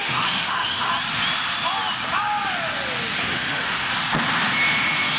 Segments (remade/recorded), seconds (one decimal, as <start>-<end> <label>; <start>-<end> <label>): 0.0-0.9 remade; 0.9-3.3 recorded; 3.3-3.9 remade; 3.9-5.2 recorded